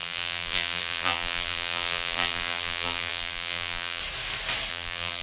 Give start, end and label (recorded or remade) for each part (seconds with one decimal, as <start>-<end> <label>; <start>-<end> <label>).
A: 0.0-4.0 remade; 4.0-4.7 recorded; 4.7-5.2 remade